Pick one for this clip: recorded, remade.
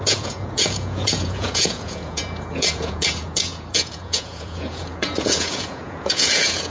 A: remade